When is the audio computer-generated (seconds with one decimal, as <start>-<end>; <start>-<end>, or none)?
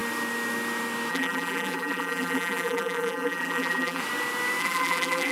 1.1-4.0; 4.6-5.3